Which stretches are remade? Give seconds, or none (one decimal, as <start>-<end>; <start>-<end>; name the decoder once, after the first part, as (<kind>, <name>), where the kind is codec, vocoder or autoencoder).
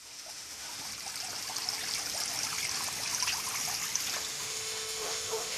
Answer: 0.0-0.9 (autoencoder, DAC-VAE); 4.3-5.6